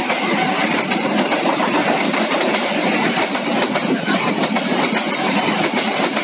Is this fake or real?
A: fake